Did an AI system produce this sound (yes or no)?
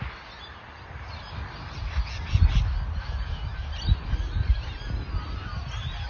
no